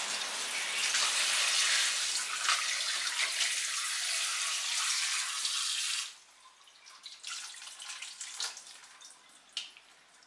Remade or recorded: recorded